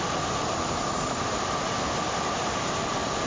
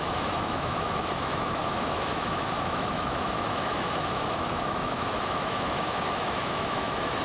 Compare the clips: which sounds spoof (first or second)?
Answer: second